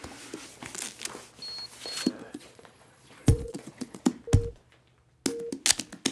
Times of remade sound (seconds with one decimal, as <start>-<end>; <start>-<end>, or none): 2.2-4.0